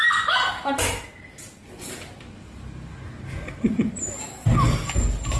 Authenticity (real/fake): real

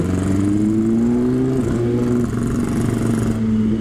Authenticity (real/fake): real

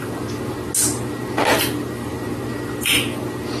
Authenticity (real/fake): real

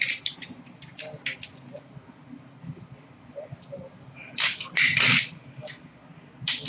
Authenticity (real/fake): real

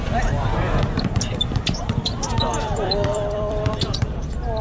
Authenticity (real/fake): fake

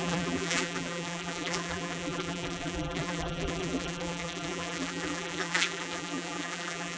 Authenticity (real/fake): fake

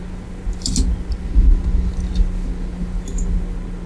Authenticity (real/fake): real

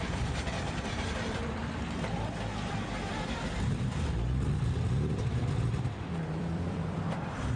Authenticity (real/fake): fake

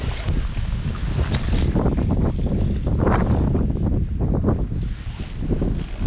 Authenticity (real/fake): real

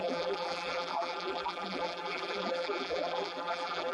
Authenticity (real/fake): fake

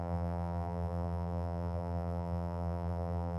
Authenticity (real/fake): fake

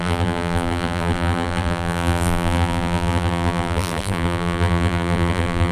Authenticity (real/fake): fake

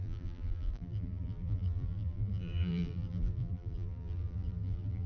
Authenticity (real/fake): fake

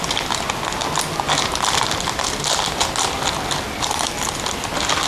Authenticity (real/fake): real